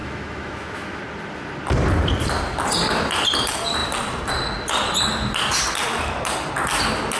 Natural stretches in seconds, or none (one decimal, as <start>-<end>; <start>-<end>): 1.0-7.2